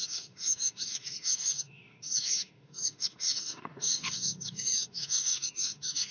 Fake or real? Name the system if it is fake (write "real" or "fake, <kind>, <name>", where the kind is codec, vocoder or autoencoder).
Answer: fake, autoencoder, DAC-VAE